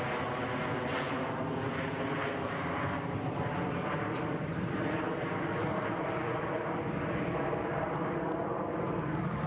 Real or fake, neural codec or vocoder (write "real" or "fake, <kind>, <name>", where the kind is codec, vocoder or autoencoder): real